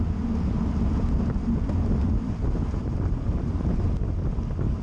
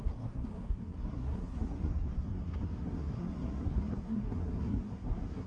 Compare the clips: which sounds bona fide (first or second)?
first